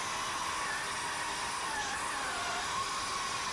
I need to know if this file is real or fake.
real